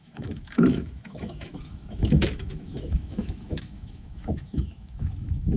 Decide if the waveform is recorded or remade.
remade